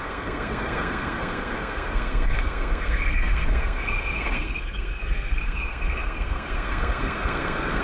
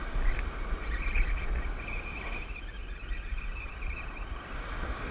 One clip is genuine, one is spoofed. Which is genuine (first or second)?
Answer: second